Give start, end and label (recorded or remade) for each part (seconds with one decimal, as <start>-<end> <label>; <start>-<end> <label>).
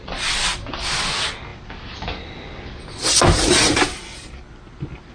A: 0.0-5.1 recorded